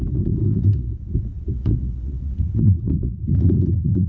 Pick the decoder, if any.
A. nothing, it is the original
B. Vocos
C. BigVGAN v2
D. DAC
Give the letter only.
B